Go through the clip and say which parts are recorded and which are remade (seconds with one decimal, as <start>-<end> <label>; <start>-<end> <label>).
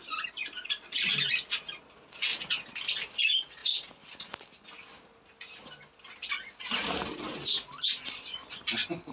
0.0-9.1 recorded